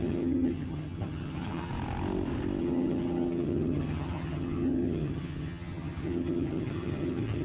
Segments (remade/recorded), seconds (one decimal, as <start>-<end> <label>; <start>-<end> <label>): 0.0-1.7 remade; 1.7-2.6 recorded; 2.6-7.4 remade